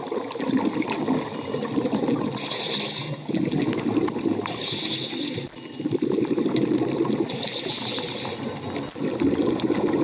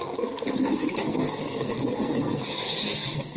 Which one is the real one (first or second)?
first